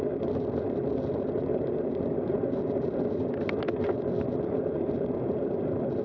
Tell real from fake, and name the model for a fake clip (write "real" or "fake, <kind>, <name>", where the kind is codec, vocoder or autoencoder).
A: real